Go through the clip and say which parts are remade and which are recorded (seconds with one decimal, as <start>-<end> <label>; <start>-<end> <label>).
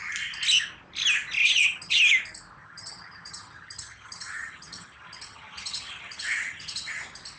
0.0-1.4 recorded; 1.4-2.0 remade; 2.0-2.6 recorded; 2.6-7.0 remade; 7.0-7.4 recorded